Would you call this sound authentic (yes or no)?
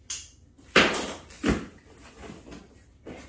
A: yes